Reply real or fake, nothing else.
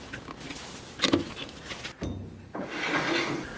real